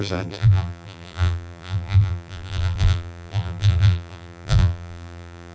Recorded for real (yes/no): no